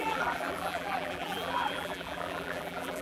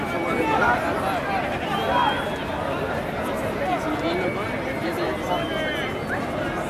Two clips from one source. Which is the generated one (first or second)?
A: first